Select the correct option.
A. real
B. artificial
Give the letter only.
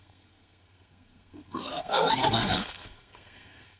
B